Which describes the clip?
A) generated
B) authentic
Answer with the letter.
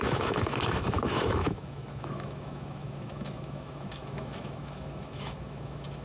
A